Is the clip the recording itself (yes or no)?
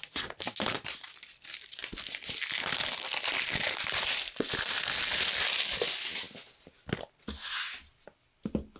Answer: yes